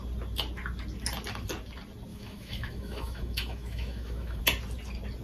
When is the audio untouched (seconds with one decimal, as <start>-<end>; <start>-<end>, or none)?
0.0-2.1; 4.4-5.2